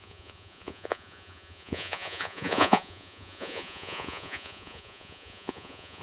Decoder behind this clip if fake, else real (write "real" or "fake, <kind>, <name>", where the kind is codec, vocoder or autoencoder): fake, vocoder, Vocos